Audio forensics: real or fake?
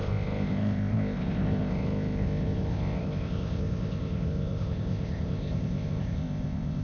fake